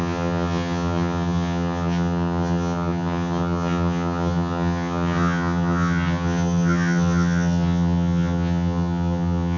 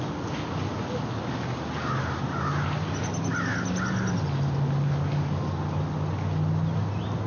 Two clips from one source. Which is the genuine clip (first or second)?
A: second